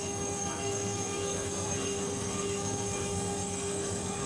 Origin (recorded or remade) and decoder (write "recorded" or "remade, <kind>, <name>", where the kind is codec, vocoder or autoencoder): remade, codec, SNAC